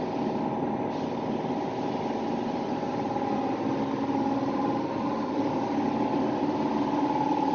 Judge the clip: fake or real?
real